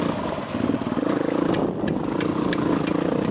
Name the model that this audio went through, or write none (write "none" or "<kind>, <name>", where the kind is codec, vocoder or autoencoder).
none